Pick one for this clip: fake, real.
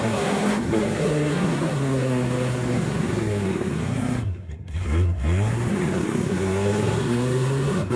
fake